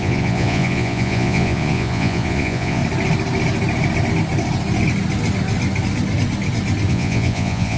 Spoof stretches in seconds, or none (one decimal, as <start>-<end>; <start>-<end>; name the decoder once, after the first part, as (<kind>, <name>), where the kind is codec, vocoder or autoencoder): 0.0-2.8 (vocoder, Vocos); 6.9-7.8